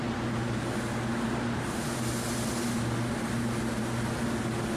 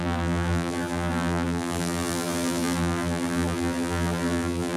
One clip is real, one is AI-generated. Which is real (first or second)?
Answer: first